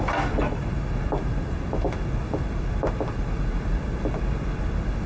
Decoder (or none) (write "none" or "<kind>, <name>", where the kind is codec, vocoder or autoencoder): none